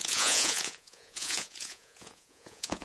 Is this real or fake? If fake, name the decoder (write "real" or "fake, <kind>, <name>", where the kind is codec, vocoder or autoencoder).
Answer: fake, vocoder, Vocos